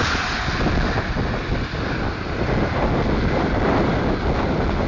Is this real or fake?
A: real